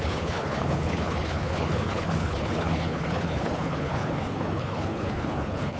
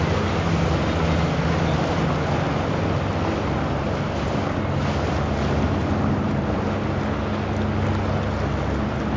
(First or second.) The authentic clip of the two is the second